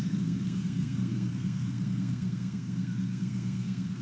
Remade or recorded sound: remade